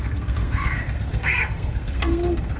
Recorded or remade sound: remade